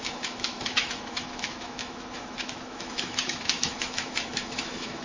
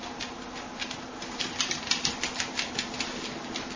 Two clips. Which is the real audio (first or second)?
second